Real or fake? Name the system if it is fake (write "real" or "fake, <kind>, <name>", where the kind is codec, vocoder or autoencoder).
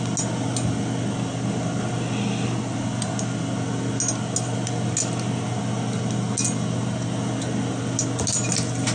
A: real